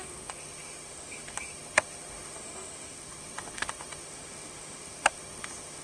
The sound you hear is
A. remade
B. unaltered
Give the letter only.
A